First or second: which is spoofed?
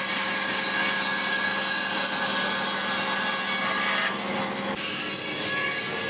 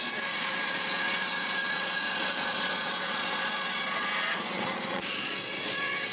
second